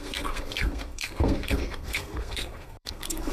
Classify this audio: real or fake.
fake